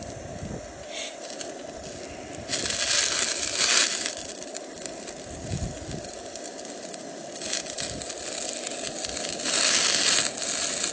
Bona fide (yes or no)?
yes